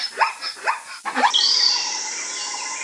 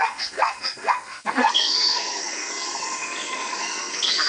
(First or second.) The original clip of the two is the first